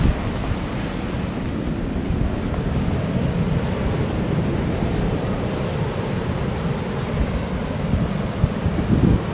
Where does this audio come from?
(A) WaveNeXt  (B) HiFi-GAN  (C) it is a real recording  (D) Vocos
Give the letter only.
C